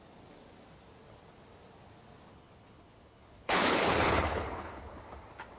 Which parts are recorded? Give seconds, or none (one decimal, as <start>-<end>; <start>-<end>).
0.0-2.3; 5.0-5.6